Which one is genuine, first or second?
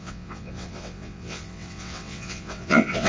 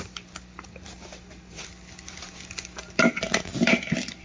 second